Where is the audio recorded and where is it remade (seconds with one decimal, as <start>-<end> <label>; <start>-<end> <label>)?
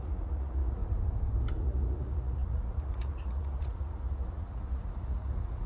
0.0-0.8 remade; 0.8-1.6 recorded; 1.6-5.7 remade